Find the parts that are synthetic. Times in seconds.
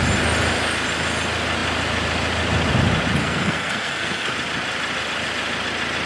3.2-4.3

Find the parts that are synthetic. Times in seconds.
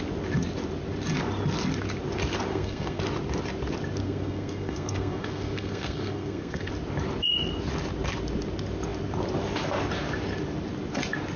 2.5-3.0; 4.0-6.7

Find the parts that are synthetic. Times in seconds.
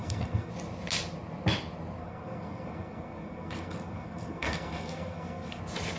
0.0-0.5; 2.0-5.6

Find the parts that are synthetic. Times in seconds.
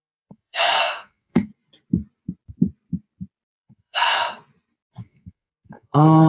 0.0-1.5; 3.5-4.1; 5.0-6.3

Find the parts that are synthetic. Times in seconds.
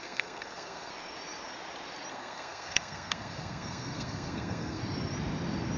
0.0-0.9; 2.1-4.8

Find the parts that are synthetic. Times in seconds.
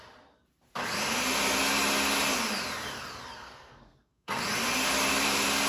3.4-4.4